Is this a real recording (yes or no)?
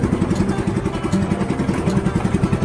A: yes